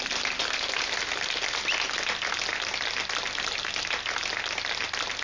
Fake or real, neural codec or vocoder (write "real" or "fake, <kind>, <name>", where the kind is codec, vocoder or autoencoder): real